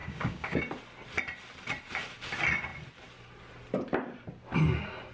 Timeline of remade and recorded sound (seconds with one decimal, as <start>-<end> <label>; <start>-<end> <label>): 0.0-0.6 remade; 0.6-5.1 recorded